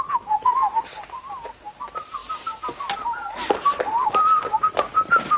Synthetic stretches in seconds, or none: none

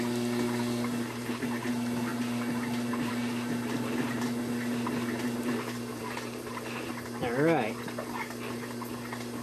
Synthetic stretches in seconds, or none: 5.9-6.9 (vocoder, BigVGAN v2)

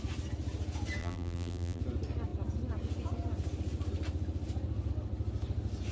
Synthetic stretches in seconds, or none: 1.0-1.8 (vocoder, BigVGAN v2)

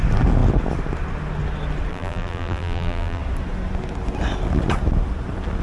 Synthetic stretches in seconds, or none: 1.9-3.2 (vocoder, BigVGAN v2)

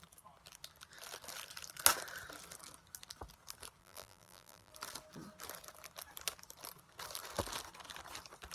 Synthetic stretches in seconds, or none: 3.8-4.7 (vocoder, BigVGAN v2)

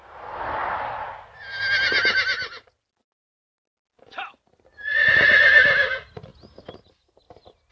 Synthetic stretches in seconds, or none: 6.3-6.9 (vocoder, BigVGAN v2)